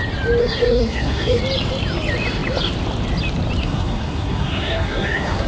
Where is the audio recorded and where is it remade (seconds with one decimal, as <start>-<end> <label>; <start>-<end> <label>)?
0.0-0.4 recorded; 0.4-1.4 remade; 1.4-3.6 recorded; 3.6-5.5 remade